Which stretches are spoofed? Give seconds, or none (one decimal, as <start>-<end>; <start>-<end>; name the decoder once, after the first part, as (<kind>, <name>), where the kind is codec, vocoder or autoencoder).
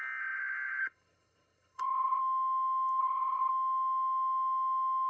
0.8-2.2 (codec, HILCodec); 3.0-3.5